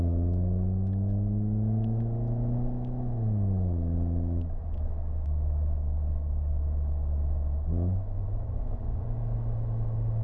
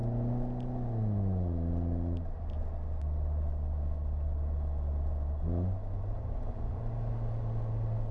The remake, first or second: first